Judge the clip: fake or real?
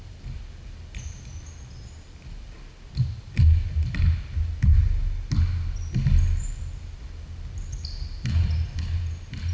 real